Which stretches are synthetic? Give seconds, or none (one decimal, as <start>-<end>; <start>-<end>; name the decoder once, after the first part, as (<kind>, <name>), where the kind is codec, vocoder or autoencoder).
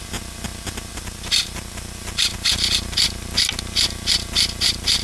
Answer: none